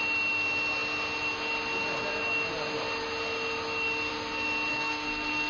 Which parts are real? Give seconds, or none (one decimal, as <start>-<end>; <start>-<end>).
0.0-4.7

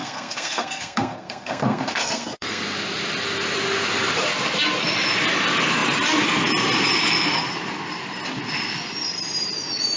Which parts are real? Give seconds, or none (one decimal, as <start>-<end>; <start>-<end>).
2.6-10.0

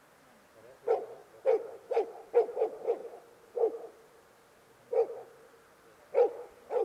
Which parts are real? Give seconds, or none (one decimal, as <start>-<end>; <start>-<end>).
0.0-1.2; 1.8-6.8

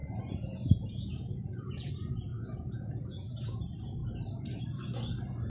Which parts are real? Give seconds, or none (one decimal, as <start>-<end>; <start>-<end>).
1.9-2.3; 3.6-5.5

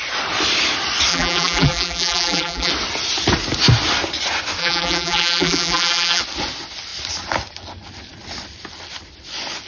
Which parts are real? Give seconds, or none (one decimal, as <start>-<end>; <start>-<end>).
0.0-1.1; 2.7-4.6; 6.2-9.7

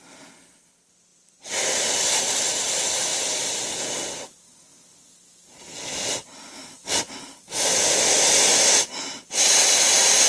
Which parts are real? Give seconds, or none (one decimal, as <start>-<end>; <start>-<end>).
0.0-1.1; 2.2-8.5; 9.2-10.3